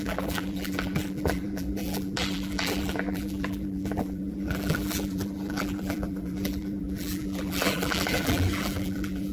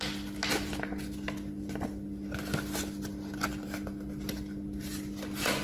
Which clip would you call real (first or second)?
second